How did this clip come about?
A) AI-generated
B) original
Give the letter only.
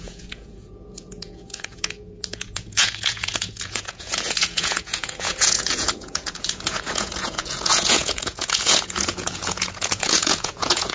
A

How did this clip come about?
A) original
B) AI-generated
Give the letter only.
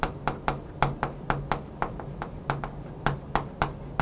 A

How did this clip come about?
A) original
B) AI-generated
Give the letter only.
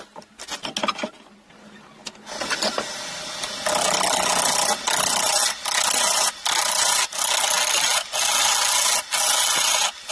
A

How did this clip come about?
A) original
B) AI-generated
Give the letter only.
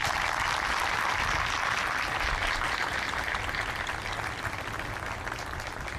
A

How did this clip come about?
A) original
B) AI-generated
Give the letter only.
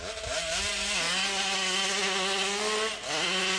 A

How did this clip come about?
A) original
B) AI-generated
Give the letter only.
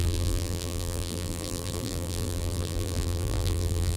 B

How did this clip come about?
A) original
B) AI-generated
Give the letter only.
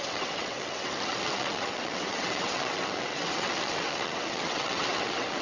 B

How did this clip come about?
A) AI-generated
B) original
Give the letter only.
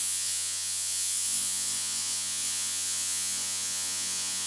A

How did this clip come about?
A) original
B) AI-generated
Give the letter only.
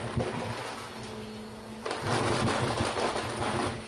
A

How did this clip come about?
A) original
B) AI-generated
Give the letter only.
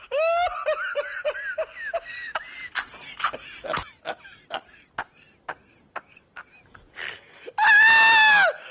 A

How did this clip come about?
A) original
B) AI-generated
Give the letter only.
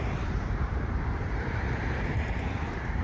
B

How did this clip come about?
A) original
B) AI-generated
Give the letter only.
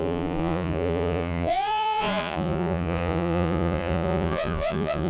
B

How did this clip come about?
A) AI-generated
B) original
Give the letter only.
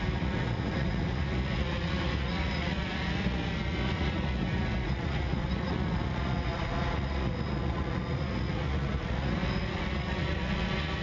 A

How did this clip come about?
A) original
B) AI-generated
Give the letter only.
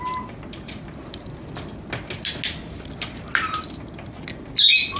A